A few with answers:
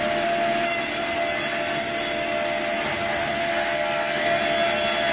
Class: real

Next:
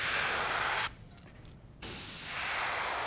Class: real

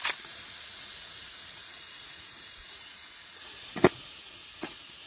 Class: fake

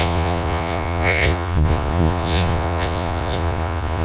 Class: fake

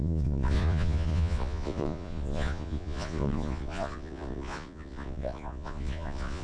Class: fake